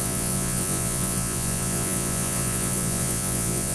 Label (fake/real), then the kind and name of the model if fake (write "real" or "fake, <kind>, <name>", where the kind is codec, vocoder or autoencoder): fake, vocoder, Vocos